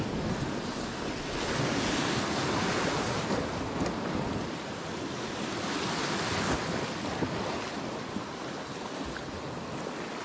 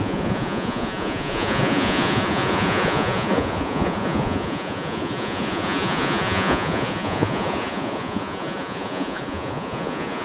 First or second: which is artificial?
second